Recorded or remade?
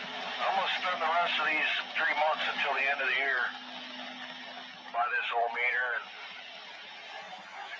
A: recorded